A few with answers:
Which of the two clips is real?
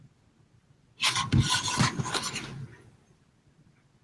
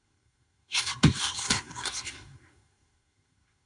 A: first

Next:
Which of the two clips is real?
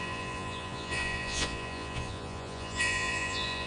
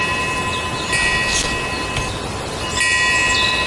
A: second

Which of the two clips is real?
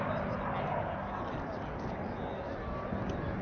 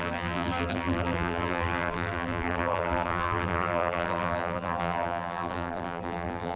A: first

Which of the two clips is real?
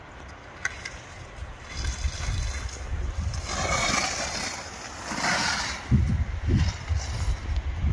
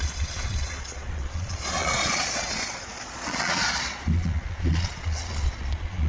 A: first